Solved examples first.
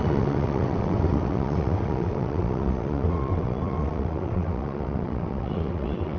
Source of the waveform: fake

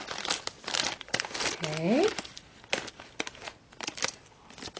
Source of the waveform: real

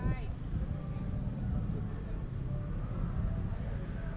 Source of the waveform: real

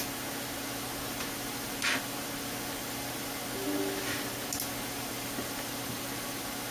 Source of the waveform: real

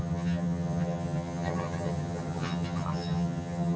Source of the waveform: fake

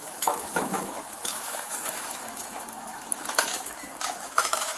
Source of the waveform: fake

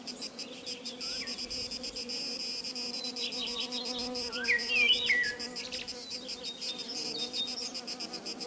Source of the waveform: real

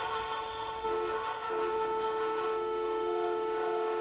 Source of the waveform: fake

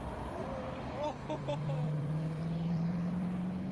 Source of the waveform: fake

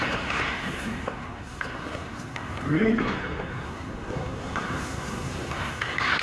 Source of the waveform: fake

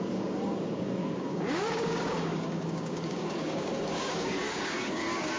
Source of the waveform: fake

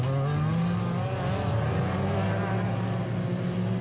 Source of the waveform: real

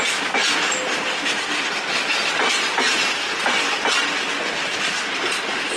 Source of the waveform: real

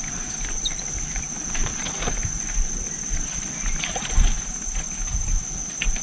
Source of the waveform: real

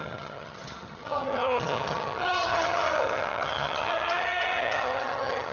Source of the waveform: fake